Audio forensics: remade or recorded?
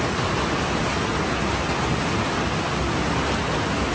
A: recorded